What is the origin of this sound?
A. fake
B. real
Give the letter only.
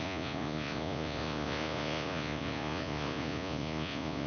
A